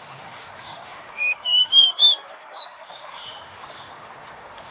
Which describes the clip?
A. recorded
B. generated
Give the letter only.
B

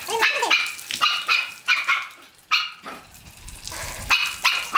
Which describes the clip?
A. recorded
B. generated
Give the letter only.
B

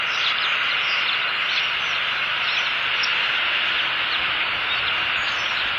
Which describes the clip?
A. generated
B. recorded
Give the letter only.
B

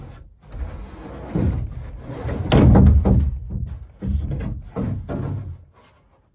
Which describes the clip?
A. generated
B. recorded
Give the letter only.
B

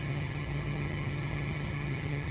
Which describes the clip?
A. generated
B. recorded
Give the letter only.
A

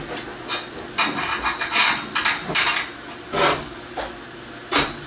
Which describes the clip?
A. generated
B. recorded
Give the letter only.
B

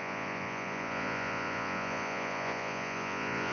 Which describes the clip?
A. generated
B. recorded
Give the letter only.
A